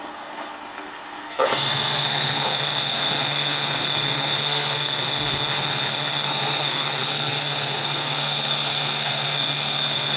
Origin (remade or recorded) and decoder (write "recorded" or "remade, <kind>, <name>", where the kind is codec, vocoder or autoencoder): remade, codec, SNAC